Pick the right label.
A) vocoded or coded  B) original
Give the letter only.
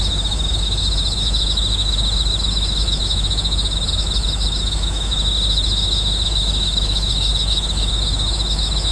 A